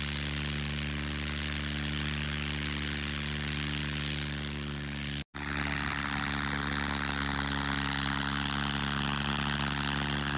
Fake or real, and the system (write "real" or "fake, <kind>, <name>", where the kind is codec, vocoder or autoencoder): real